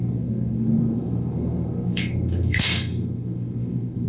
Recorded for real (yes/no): no